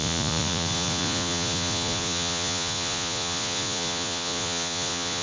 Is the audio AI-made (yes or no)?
yes